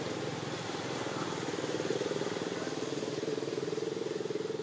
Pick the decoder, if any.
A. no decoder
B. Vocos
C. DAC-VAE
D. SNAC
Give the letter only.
A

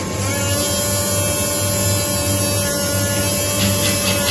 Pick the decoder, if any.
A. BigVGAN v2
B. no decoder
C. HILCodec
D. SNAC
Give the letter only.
B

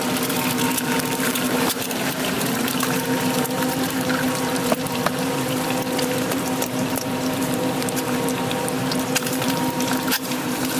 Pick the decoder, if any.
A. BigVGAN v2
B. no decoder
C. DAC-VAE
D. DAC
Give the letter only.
A